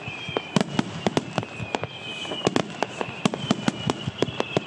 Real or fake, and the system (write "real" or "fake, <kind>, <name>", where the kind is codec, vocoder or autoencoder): real